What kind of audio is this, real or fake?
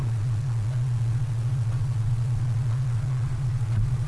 fake